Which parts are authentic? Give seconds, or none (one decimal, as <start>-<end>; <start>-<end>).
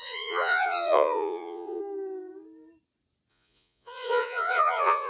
1.8-3.3